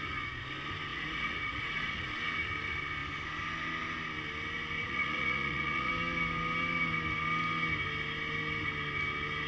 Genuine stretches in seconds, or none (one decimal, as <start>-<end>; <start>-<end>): 0.0-0.9; 2.1-4.8; 5.9-9.5